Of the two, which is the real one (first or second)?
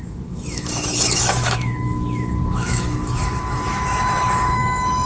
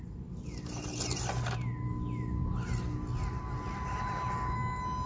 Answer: second